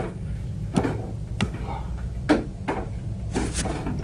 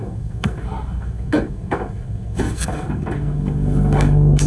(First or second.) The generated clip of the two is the second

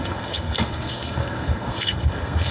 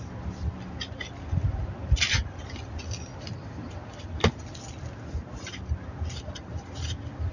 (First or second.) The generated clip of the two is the first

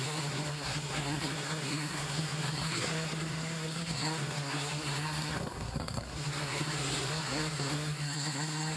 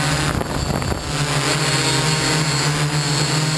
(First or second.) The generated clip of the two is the first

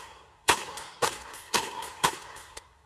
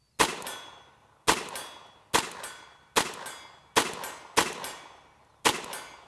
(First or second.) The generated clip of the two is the first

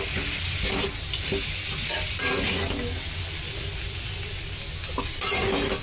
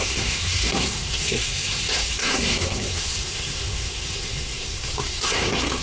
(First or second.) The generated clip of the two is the second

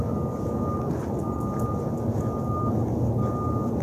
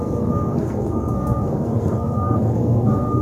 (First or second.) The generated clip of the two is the second